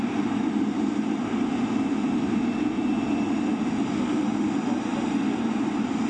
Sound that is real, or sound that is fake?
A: real